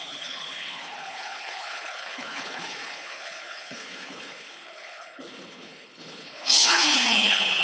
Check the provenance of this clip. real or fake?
fake